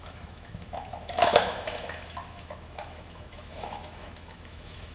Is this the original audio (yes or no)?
no